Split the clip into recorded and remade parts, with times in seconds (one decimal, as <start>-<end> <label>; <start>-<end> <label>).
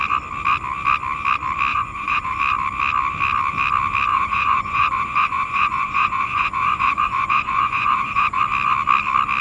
0.0-1.7 recorded; 1.7-2.3 remade; 2.3-4.1 recorded; 4.1-8.4 remade; 8.4-9.4 recorded